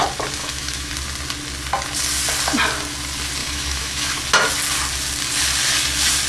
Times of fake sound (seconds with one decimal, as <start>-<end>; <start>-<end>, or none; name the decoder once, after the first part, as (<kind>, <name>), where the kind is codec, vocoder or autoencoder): 0.4-0.9 (autoencoder, DAC-VAE); 3.4-4.2